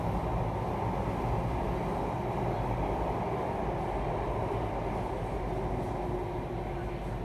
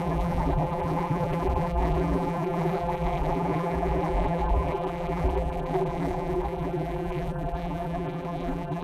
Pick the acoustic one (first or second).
first